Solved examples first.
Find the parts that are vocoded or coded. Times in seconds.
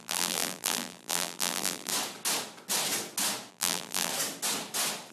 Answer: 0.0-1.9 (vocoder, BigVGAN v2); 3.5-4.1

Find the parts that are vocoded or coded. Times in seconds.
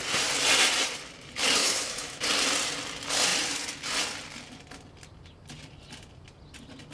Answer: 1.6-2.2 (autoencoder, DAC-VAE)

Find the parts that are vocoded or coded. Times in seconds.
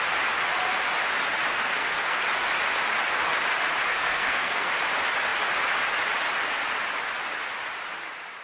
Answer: 1.5-2.2 (codec, SNAC); 3.9-4.7